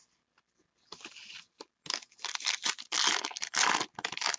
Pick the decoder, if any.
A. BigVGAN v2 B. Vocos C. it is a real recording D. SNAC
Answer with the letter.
C